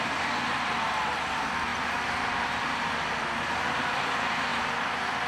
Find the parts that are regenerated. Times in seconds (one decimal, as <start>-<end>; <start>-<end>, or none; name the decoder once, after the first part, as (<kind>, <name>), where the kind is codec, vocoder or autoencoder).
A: 0.0-4.5 (vocoder, BigVGAN v2)

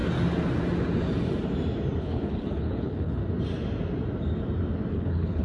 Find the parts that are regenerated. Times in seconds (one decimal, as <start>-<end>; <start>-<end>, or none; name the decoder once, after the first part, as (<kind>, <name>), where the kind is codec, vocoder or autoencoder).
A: 2.0-3.2 (codec, HILCodec); 4.9-5.4